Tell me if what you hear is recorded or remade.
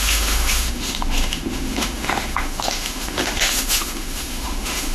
remade